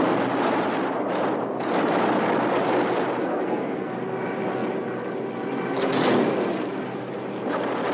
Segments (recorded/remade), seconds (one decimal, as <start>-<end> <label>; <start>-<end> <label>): 0.0-3.2 recorded; 3.2-4.0 remade; 4.0-7.9 recorded